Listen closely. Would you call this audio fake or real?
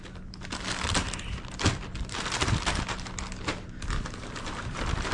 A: real